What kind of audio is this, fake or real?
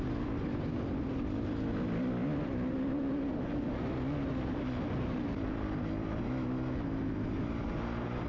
real